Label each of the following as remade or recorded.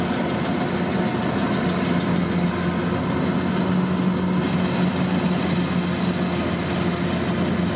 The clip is recorded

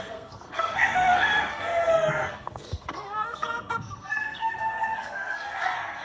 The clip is remade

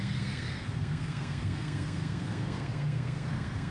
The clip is remade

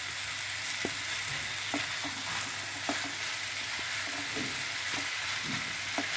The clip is recorded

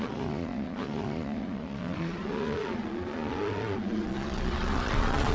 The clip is remade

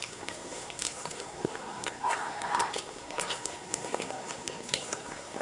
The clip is remade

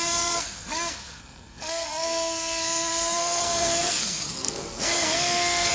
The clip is remade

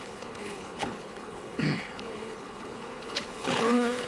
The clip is remade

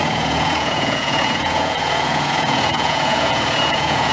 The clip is remade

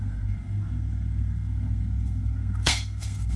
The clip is remade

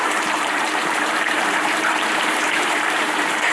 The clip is remade